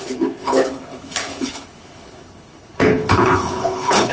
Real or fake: fake